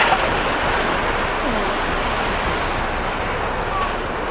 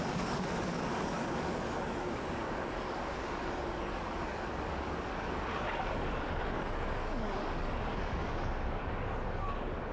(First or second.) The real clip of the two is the first